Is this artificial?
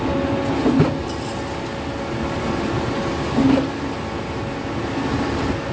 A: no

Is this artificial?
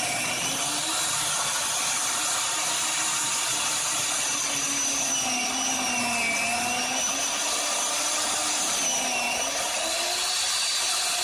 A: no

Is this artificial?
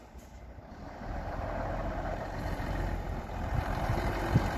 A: yes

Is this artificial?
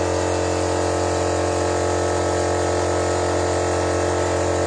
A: no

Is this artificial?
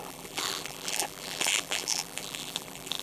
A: yes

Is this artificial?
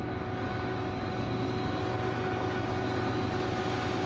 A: no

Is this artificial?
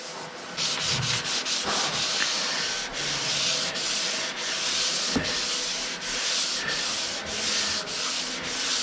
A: no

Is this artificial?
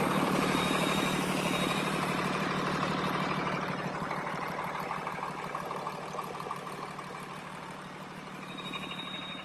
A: yes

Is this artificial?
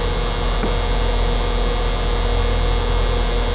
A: no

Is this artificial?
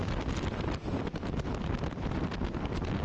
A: no